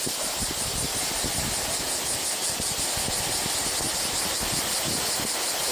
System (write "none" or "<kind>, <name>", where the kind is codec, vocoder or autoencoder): none